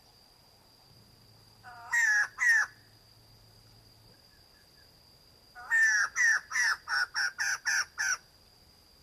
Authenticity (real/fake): real